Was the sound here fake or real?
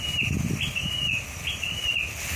real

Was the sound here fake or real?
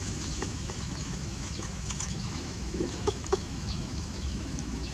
fake